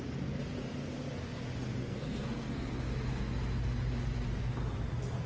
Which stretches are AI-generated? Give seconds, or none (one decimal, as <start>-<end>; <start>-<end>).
1.8-2.8